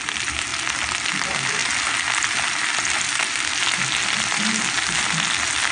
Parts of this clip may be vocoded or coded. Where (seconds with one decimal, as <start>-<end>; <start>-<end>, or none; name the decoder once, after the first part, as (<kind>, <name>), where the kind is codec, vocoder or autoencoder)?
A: none